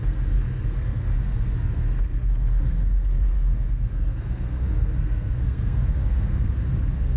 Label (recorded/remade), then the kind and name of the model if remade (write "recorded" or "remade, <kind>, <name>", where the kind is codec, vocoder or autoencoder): remade, codec, SNAC